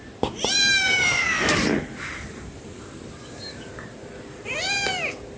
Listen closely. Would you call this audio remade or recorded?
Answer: remade